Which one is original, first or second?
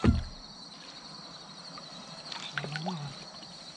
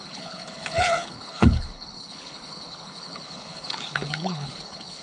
first